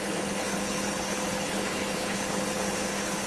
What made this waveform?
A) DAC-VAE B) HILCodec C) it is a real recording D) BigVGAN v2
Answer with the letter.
B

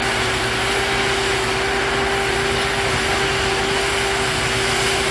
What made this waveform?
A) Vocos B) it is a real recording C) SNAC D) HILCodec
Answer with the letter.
B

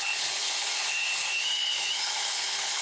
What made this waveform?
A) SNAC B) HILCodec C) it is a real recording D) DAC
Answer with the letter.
B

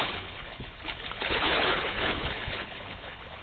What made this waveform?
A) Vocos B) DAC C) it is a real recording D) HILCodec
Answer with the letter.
D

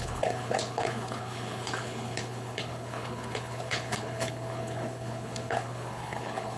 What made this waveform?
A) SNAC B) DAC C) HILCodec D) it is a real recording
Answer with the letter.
C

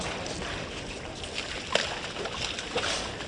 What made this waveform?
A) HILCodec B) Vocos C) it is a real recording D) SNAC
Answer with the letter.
C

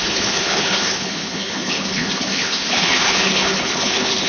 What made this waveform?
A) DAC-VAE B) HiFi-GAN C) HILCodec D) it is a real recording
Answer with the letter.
C